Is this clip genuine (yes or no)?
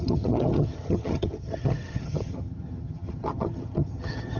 no